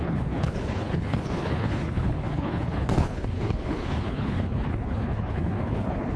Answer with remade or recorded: remade